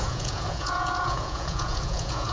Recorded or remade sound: remade